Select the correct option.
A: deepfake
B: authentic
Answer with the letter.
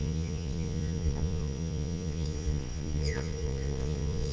A